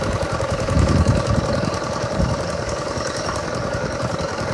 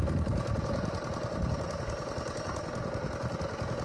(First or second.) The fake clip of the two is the first